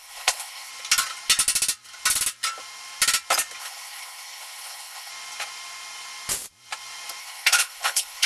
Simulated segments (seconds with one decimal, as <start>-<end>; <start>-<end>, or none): 0.0-0.7; 3.6-5.1; 7.2-8.3

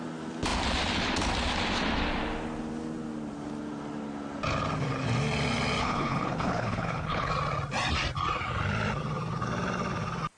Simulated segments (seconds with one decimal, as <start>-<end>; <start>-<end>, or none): 5.8-7.3

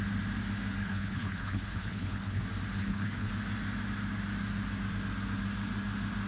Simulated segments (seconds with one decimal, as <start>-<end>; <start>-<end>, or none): 0.8-2.4; 2.8-3.3

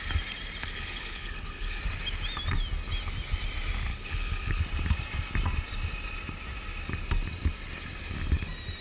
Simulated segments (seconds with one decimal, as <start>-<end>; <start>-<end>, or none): 0.6-1.8; 3.9-4.6

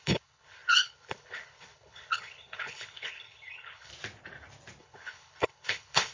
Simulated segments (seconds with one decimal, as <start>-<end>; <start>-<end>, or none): 0.0-3.9; 4.8-6.1

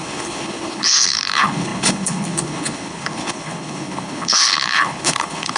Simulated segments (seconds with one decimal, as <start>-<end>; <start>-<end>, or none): 0.0-5.6